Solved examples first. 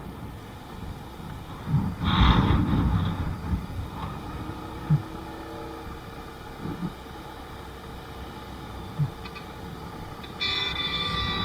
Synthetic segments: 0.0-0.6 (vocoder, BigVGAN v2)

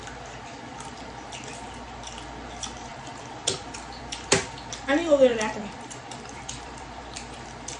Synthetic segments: 5.3-7.8 (vocoder, BigVGAN v2)

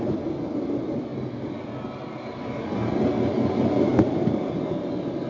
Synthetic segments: 3.9-4.6 (vocoder, BigVGAN v2)